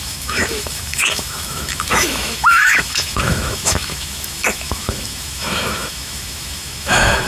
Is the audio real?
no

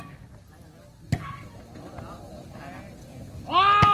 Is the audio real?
yes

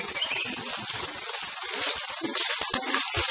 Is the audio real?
yes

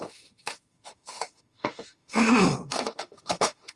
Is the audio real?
no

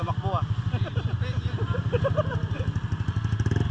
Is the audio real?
yes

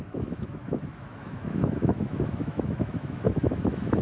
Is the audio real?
no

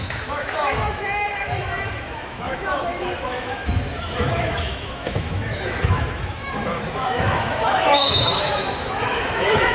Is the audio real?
no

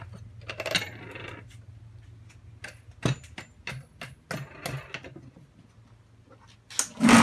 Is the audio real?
yes